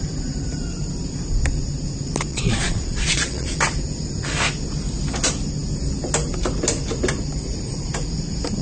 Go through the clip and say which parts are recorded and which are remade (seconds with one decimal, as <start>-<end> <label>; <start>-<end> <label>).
0.0-2.3 recorded; 2.3-3.6 remade; 3.6-8.6 recorded